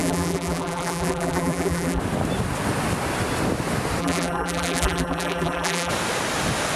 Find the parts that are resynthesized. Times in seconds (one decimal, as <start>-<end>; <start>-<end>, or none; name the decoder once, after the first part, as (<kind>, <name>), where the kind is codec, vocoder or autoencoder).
0.0-2.0 (vocoder, BigVGAN v2); 4.0-5.9